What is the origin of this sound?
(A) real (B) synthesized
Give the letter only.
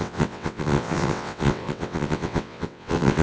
B